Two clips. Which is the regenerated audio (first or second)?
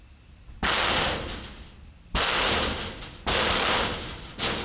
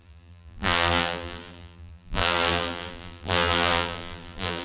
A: second